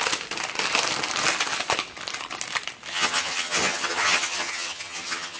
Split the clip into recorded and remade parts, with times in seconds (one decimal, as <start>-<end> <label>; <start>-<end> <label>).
0.0-2.9 recorded; 2.9-5.4 remade